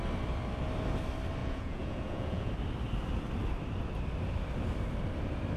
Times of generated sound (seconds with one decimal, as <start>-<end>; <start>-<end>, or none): 1.4-2.5